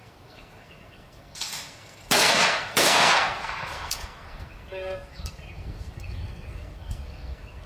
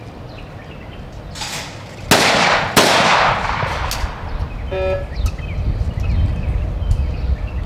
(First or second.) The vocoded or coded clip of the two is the first